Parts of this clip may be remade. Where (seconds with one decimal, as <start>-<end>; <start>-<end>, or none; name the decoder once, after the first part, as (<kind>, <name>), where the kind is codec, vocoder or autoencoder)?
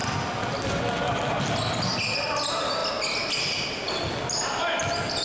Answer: none